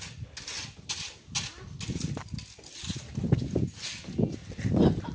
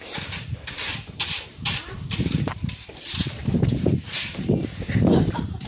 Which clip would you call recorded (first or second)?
first